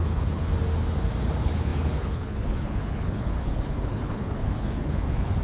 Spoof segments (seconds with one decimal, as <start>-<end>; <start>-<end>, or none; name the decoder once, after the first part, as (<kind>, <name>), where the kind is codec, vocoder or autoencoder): 0.0-0.5 (codec, HILCodec); 1.2-5.4